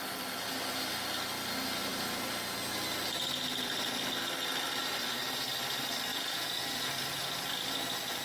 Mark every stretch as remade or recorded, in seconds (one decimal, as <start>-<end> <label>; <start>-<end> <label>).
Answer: 0.0-6.1 recorded; 6.1-6.9 remade; 6.9-8.2 recorded

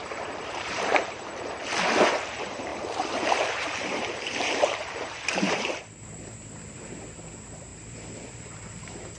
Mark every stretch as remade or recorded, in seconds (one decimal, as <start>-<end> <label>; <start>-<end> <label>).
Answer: 0.0-1.3 remade; 1.3-2.3 recorded; 2.3-9.2 remade

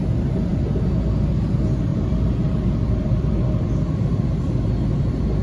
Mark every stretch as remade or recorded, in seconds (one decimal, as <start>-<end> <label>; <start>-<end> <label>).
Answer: 0.0-1.9 recorded; 1.9-3.5 remade; 3.5-5.4 recorded